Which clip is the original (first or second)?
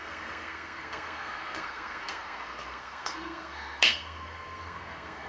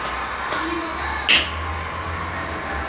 second